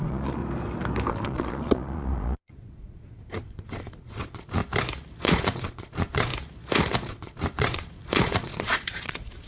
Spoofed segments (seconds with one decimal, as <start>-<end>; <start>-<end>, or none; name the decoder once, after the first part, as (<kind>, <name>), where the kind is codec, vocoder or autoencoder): 0.0-0.4 (vocoder, Vocos); 1.1-4.6; 5.2-6.3; 7.1-9.5